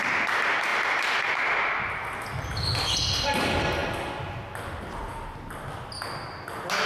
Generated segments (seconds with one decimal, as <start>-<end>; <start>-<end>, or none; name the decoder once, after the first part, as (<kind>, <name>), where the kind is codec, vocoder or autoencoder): none